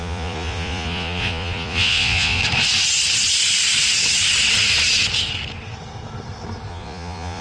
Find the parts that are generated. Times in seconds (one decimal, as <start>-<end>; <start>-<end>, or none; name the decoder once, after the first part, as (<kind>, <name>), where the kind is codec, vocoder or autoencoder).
0.0-2.4 (vocoder, Vocos); 6.7-7.4